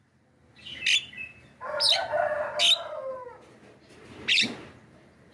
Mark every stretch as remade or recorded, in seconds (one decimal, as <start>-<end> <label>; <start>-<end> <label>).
0.0-5.3 recorded